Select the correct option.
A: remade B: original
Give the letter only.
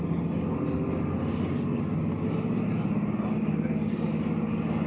B